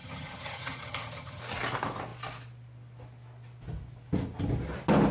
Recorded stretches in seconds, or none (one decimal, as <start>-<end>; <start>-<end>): 1.4-5.1